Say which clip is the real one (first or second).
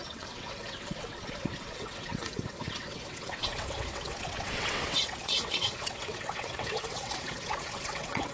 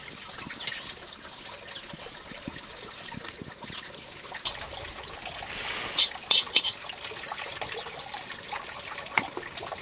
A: second